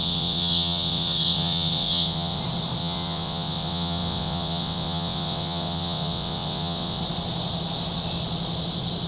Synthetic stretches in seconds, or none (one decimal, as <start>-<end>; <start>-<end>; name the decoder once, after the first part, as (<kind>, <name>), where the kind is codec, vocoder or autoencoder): 0.0-2.4 (vocoder, WaveNeXt); 2.8-7.0